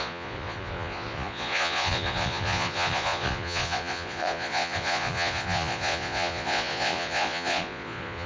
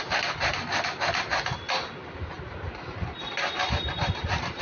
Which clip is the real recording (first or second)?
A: second